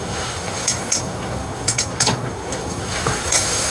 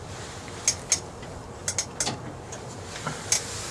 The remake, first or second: first